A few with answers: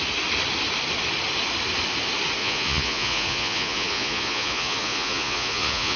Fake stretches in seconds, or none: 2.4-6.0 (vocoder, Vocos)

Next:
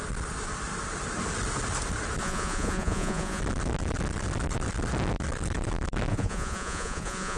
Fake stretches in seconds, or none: 2.2-3.4 (vocoder, Vocos); 6.1-7.4

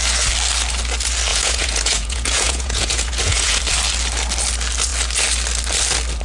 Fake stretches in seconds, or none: 1.3-3.6 (vocoder, Vocos)

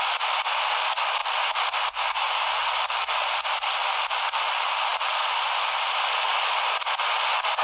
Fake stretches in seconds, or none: none

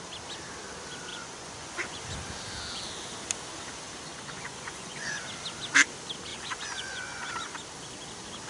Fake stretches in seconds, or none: 1.1-2.0 (vocoder, Vocos); 4.1-5.2; 6.3-7.3